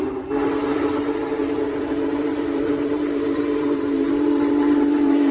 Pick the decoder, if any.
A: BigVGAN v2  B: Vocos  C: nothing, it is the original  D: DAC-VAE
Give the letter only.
A